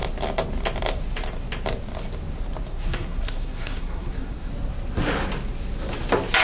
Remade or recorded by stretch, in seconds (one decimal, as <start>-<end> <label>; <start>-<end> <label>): 0.0-2.7 recorded; 2.7-4.5 remade; 4.5-6.4 recorded